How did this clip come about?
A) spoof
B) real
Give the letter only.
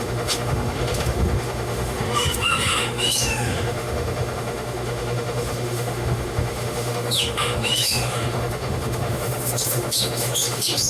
A